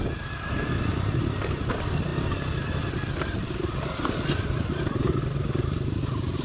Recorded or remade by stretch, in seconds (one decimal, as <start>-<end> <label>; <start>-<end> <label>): 0.0-6.4 recorded